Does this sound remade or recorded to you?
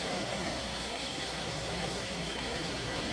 remade